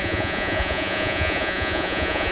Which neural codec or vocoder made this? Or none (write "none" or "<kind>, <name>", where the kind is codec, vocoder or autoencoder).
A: vocoder, Vocos